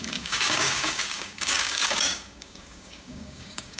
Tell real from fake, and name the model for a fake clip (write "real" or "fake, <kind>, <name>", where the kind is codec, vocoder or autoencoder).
fake, codec, DAC